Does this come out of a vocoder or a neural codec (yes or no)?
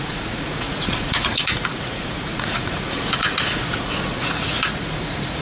yes